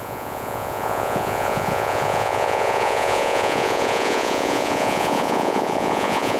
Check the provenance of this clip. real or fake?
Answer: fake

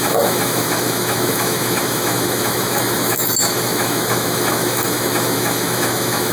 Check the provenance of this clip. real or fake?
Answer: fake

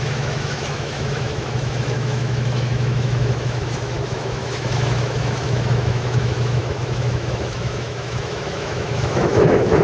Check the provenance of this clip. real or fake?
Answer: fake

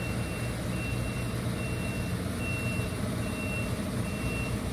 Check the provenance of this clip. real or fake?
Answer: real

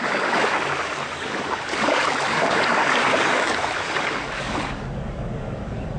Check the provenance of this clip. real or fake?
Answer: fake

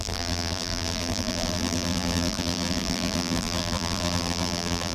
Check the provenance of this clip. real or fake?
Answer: fake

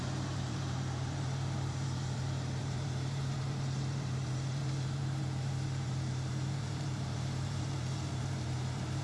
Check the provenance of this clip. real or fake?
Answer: fake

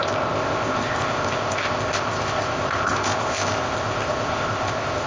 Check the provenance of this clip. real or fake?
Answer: fake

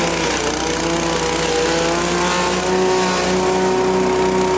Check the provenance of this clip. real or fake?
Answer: real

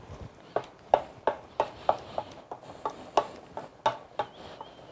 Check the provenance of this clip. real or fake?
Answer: real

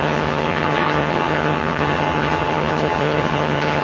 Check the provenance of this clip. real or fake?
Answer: fake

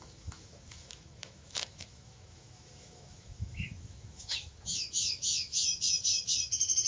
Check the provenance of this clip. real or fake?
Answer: fake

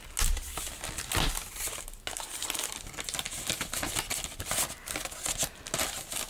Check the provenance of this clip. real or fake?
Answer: real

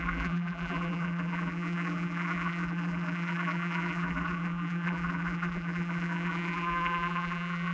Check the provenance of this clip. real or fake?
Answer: fake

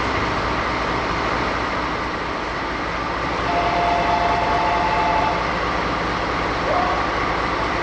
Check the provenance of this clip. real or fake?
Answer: real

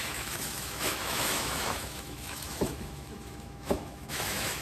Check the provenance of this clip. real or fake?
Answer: fake